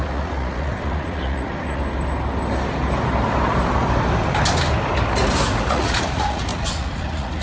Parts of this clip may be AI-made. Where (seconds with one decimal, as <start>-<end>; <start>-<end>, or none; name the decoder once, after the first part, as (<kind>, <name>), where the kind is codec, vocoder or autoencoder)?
0.0-1.8 (vocoder, Vocos); 5.7-7.4